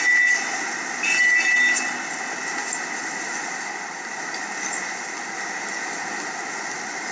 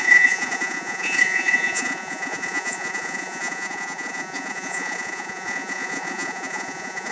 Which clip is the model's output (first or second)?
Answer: second